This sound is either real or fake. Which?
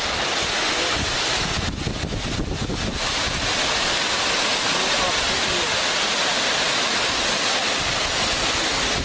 real